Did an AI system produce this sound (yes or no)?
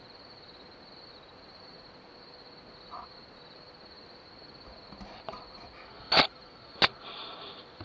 no